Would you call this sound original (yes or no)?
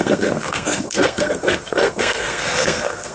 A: no